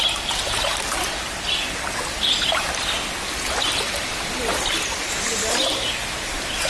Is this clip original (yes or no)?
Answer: yes